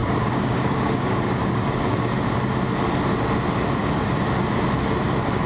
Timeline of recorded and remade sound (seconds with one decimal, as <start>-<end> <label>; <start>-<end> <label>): 0.0-2.1 remade; 2.1-5.5 recorded